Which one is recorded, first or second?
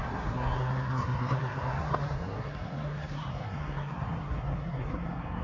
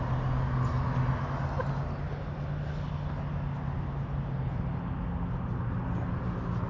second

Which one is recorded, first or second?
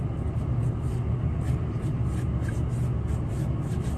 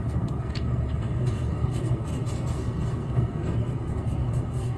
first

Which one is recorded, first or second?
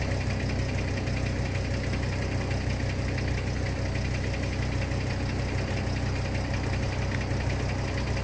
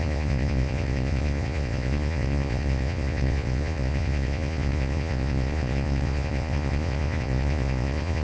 first